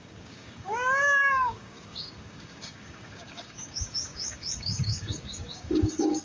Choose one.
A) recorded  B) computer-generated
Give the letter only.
B